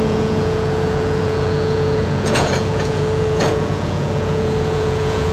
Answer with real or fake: fake